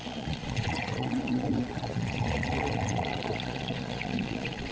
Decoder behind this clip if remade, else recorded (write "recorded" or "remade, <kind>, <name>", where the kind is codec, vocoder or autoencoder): remade, vocoder, Vocos